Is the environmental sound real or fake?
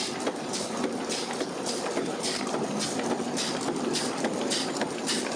real